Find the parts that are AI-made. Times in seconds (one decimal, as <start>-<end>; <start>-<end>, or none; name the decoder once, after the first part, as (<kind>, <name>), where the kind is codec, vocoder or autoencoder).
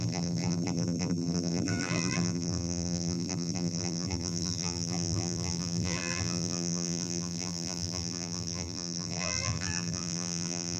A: 0.0-10.8 (vocoder, BigVGAN v2)